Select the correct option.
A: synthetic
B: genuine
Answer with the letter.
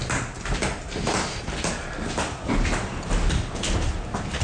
B